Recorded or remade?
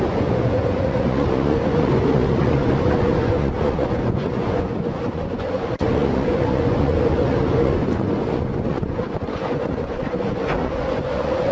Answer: remade